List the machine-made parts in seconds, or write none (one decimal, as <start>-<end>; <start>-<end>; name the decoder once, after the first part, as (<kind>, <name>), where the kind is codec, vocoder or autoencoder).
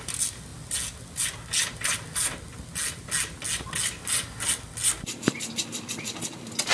none